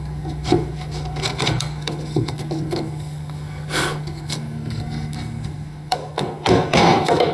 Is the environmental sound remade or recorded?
remade